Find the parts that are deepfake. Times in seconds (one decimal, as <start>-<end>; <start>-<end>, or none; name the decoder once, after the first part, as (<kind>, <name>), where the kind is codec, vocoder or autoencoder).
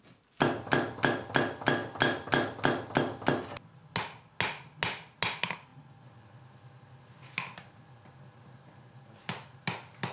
none